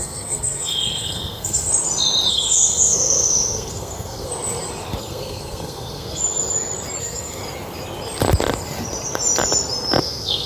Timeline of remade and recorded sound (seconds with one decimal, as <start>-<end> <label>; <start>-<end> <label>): 0.0-1.7 remade; 1.7-2.3 recorded; 2.3-4.3 remade; 4.3-5.0 recorded; 5.0-6.2 remade; 6.2-7.0 recorded; 7.0-7.4 remade; 7.4-10.0 recorded; 10.0-10.5 remade